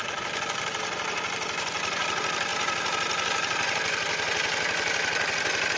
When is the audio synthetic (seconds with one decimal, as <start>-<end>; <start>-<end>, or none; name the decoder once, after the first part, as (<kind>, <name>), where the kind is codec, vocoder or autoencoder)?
none

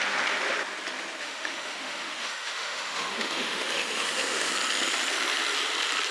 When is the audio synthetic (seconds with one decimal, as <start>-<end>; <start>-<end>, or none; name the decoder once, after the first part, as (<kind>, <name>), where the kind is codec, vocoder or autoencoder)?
1.2-4.5 (autoencoder, DAC-VAE)

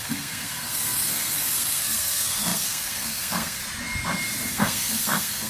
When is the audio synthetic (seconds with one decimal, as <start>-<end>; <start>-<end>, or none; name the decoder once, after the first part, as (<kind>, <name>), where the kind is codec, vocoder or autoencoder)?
0.0-3.6 (codec, SNAC); 4.5-5.5

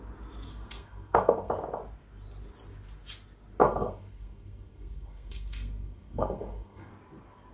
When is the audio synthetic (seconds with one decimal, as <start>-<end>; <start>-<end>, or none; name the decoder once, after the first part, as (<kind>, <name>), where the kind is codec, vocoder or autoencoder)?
0.5-1.5 (codec, SNAC); 3.6-6.9

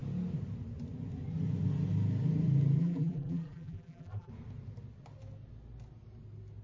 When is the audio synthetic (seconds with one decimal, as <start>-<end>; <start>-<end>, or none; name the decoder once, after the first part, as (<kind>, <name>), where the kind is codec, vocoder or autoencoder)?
2.8-4.3 (vocoder, BigVGAN v2)

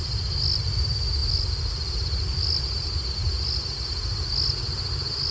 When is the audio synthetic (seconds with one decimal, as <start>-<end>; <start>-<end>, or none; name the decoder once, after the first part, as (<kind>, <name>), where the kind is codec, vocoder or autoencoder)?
none

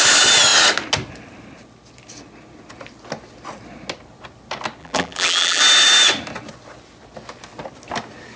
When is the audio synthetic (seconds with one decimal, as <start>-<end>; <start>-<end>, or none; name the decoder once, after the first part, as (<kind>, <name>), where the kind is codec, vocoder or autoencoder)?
4.8-5.6 (vocoder, BigVGAN v2)

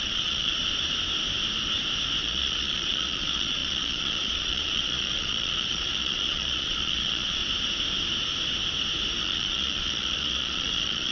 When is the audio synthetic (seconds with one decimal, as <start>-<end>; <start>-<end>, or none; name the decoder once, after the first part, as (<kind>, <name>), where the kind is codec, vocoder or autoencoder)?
0.0-0.6 (vocoder, Vocos); 2.2-7.4; 9.2-11.1